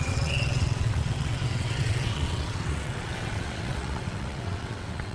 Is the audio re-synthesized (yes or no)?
yes